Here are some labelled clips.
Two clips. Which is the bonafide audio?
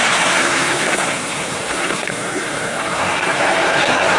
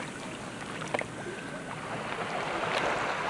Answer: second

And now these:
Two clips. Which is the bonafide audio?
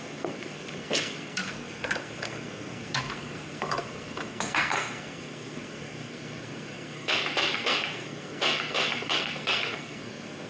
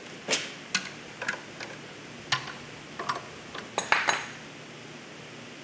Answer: second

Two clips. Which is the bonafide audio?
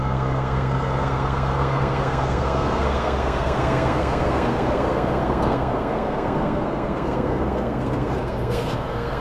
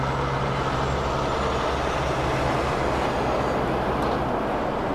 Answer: second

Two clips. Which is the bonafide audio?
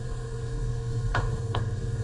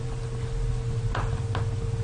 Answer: second